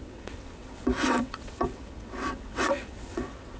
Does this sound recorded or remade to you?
remade